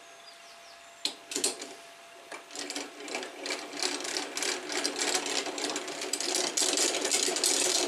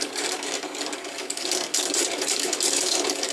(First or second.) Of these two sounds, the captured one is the first